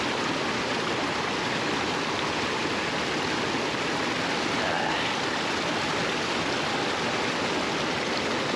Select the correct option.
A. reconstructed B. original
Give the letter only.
B